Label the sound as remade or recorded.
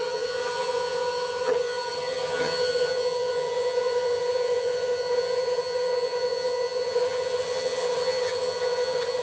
remade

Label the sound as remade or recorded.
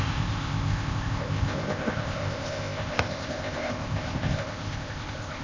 remade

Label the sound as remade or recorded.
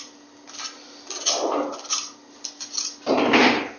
recorded